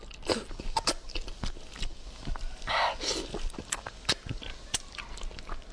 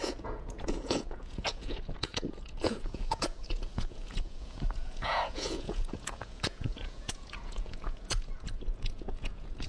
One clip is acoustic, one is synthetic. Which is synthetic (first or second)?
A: second